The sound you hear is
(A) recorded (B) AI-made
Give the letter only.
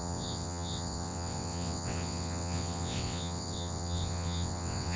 B